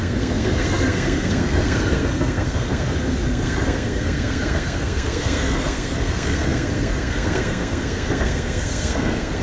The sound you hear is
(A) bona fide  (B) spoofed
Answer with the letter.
B